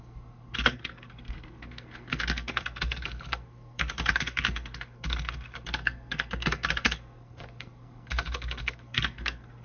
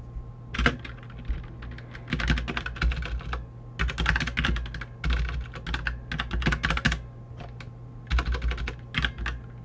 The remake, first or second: first